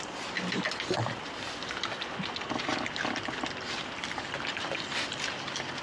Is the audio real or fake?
real